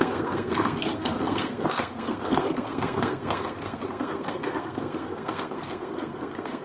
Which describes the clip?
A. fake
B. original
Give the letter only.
A